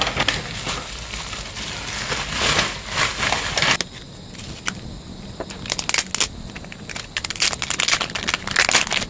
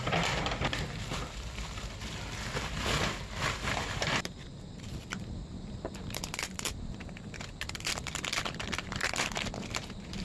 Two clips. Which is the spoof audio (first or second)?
second